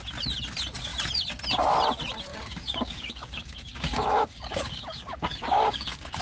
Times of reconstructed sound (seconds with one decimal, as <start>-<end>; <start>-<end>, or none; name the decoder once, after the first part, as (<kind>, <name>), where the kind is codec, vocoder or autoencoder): 2.3-6.2 (codec, DAC)

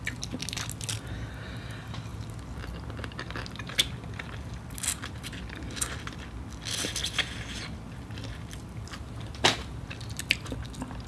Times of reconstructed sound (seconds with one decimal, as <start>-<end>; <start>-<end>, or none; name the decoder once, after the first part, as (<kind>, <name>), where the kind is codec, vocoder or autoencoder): none

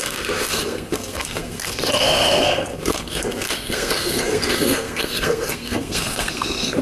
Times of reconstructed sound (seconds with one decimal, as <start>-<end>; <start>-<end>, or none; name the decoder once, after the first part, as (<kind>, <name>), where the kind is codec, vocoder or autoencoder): 0.0-6.8 (codec, SNAC)